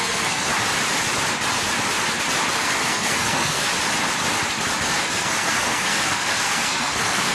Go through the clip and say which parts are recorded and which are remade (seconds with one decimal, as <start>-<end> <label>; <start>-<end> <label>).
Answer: 0.0-0.5 remade; 0.5-2.5 recorded; 2.5-3.7 remade; 3.7-4.8 recorded; 4.8-7.3 remade